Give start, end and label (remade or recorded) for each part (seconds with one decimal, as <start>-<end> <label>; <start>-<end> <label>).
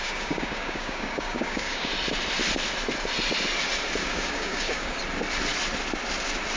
0.0-1.9 remade; 1.9-4.0 recorded; 4.0-5.0 remade; 5.0-6.6 recorded